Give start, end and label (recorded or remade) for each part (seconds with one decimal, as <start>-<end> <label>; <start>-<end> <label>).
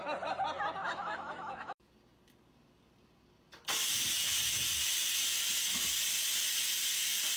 0.0-0.8 recorded; 0.8-1.9 remade; 1.9-7.4 recorded